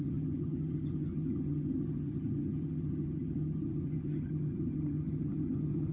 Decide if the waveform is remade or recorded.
remade